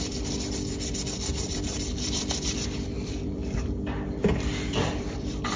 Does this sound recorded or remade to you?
remade